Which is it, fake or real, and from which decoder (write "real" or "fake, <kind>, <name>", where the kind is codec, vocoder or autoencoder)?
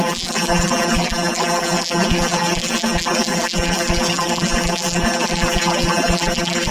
fake, vocoder, BigVGAN v2